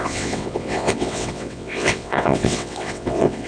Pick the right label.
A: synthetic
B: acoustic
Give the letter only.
A